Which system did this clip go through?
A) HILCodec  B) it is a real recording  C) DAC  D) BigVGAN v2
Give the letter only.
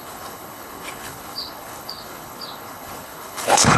A